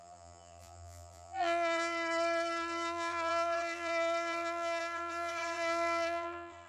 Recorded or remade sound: remade